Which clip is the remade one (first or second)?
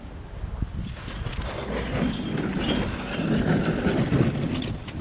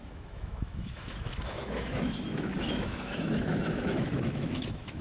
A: second